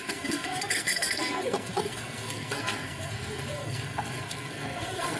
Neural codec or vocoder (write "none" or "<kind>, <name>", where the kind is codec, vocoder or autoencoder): codec, SNAC